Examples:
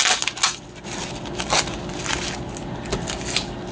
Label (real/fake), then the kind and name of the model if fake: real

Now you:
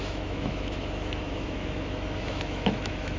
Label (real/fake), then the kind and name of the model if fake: fake, autoencoder, DAC-VAE